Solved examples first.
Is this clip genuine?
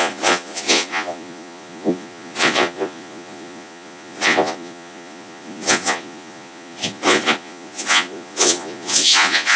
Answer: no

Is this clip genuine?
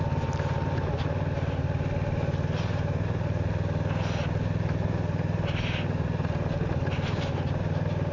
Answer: yes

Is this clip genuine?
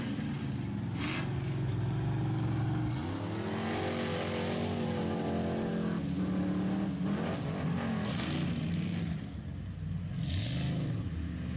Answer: yes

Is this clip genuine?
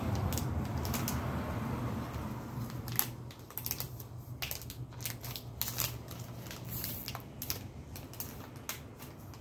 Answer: yes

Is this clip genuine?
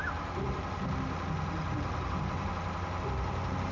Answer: yes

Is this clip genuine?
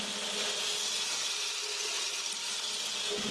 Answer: yes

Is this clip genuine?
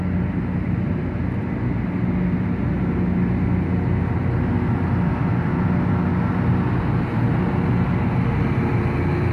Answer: yes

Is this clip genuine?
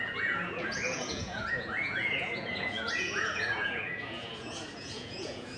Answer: no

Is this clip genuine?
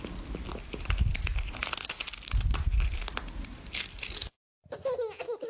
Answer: yes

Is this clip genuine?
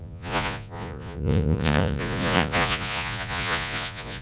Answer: no